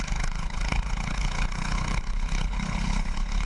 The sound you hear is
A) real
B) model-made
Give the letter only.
B